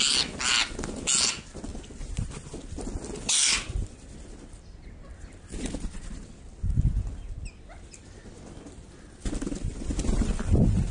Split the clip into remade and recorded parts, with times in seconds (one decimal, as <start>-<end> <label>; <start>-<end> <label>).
0.0-1.7 recorded; 1.7-6.2 remade; 6.2-10.9 recorded